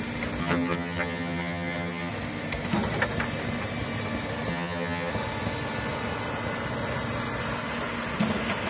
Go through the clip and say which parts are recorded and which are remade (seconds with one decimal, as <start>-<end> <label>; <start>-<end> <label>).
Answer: 0.0-0.4 recorded; 0.4-2.1 remade; 2.1-4.5 recorded; 4.5-5.1 remade; 5.1-8.7 recorded

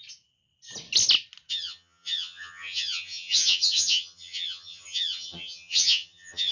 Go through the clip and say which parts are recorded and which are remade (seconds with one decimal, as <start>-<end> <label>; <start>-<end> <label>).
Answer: 0.0-1.5 recorded; 1.5-6.5 remade